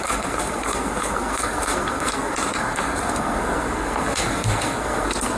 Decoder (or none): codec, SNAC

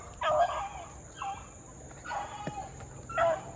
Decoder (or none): none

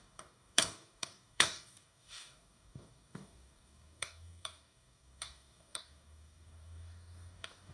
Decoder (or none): codec, DAC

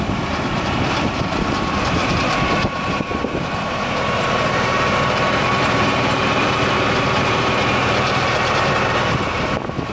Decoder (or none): vocoder, BigVGAN v2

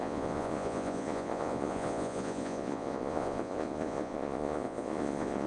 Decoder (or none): vocoder, Vocos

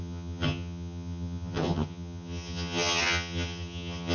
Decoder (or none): vocoder, HiFi-GAN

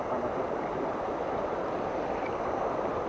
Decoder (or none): none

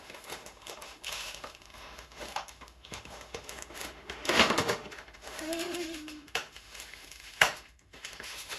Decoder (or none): autoencoder, DAC-VAE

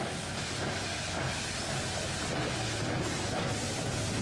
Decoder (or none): none